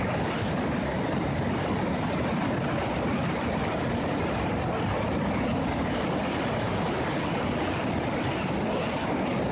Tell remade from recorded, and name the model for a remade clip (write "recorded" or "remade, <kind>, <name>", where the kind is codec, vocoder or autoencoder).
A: recorded